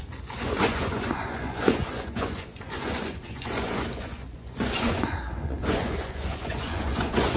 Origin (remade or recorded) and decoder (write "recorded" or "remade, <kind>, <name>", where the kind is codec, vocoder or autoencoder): remade, vocoder, Vocos